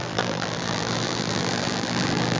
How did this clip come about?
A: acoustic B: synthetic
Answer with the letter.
B